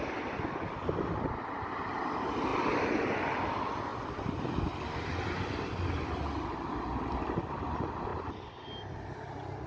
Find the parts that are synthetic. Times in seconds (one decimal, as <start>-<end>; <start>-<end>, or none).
none